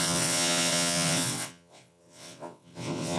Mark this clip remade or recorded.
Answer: remade